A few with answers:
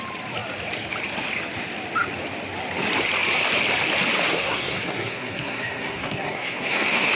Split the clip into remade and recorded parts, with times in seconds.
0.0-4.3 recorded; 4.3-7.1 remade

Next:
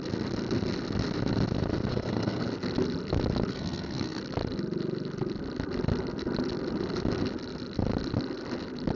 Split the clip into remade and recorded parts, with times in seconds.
0.0-1.9 recorded; 1.9-2.4 remade; 2.4-3.5 recorded; 3.5-4.2 remade; 4.2-8.9 recorded

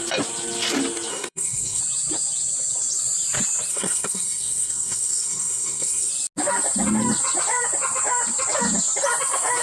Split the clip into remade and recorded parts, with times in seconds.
0.0-1.1 recorded; 1.1-1.8 remade; 1.8-3.7 recorded; 3.7-6.1 remade; 6.1-9.6 recorded

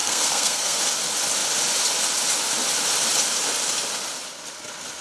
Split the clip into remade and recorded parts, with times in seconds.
0.0-0.8 remade; 0.8-5.0 recorded

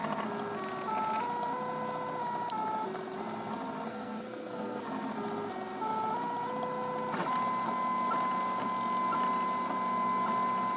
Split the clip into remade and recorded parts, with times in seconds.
0.0-3.9 recorded; 3.9-4.8 remade; 4.8-10.8 recorded

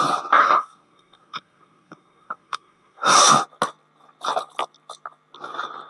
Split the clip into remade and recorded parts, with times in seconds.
0.0-0.4 recorded; 0.4-3.2 remade; 3.2-5.9 recorded